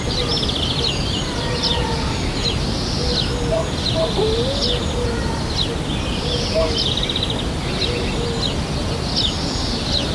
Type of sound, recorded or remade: recorded